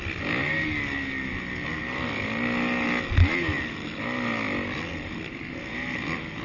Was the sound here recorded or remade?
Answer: recorded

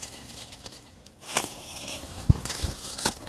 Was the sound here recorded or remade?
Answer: remade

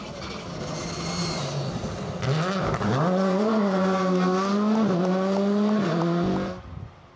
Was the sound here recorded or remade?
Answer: recorded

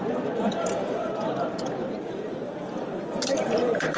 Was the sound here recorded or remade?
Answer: remade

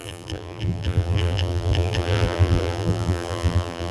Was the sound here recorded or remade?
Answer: remade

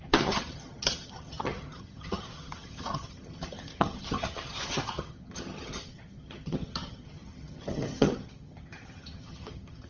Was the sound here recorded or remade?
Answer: remade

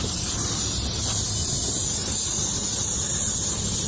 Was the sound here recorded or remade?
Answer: recorded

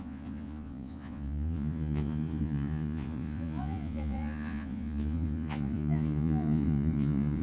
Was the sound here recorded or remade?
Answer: remade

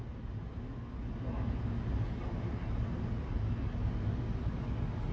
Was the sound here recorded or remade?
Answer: recorded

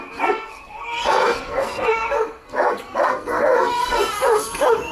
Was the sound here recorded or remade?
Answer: remade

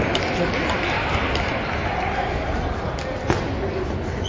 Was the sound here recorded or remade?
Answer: recorded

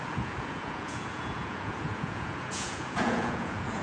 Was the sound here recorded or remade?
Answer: remade